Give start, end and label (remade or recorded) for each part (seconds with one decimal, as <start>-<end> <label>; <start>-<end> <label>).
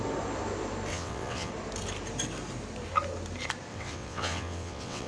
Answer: 0.0-0.9 recorded; 0.9-1.5 remade; 1.5-3.7 recorded; 3.7-5.1 remade